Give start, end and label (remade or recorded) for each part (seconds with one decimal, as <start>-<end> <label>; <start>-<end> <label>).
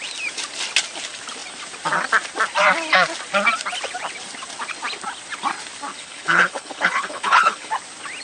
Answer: 0.0-5.9 recorded; 5.9-7.7 remade; 7.7-8.2 recorded